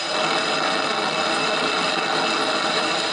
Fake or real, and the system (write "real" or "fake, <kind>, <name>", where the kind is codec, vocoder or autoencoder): real